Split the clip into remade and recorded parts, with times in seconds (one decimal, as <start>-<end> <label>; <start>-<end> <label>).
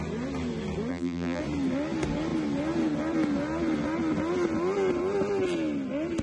0.0-0.9 recorded; 0.9-1.4 remade; 1.4-6.2 recorded